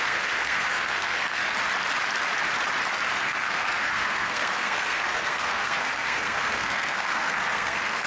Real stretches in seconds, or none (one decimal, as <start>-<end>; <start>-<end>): 1.4-3.1